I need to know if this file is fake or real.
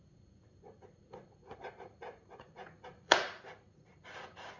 fake